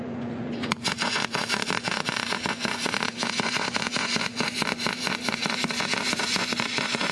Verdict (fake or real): fake